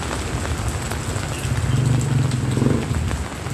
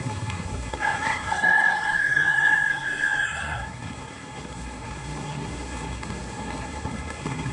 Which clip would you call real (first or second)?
first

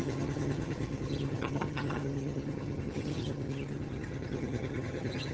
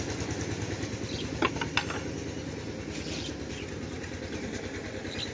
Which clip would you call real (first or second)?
second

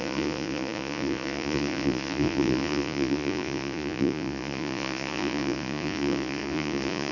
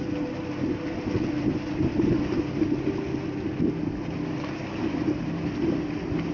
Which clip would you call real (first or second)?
second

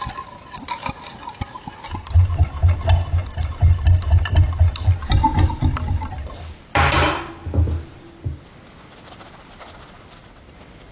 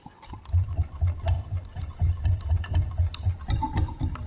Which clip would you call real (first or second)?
first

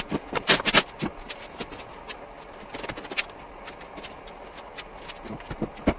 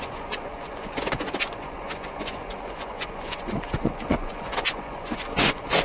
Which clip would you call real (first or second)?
first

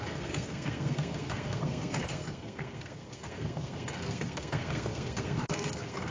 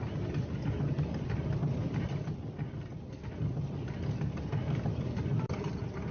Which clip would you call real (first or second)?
second